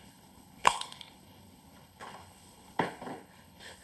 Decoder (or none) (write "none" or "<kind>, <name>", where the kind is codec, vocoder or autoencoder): codec, HILCodec